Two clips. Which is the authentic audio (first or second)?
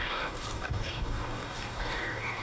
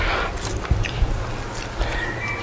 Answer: second